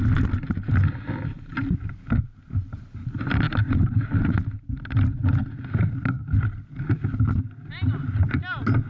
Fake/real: real